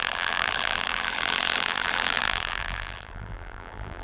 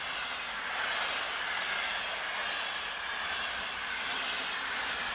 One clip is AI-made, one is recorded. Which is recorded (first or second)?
second